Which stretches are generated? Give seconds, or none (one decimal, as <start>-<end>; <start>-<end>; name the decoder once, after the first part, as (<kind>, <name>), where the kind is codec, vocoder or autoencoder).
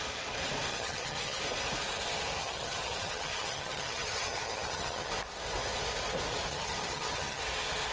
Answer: 0.7-1.4 (vocoder, HiFi-GAN); 2.4-5.1; 6.5-7.4